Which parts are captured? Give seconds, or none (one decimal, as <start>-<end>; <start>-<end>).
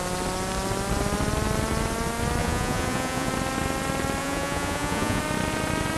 0.0-2.4; 3.3-4.2; 5.2-6.0